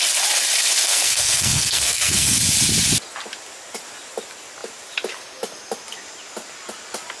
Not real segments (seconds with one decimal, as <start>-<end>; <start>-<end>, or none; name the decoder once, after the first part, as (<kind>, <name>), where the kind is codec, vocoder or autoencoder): 0.8-2.4 (codec, SNAC)